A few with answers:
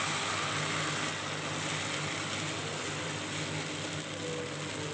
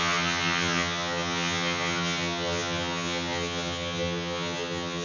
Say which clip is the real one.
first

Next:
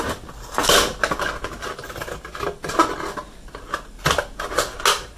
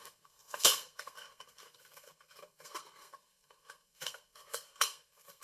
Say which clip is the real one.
first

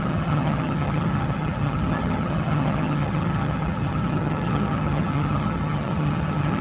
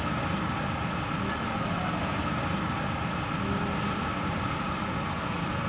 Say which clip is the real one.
second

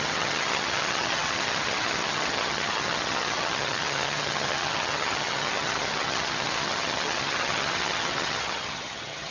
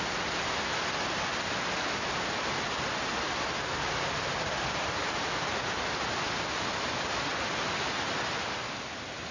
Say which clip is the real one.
second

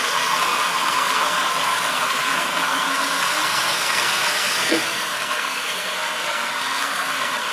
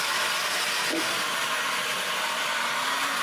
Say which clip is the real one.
second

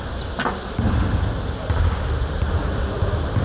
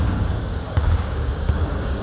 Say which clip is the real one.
first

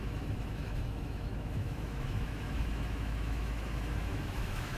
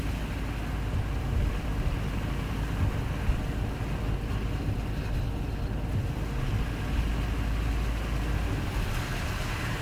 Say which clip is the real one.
second